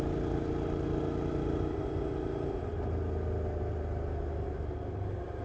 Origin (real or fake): real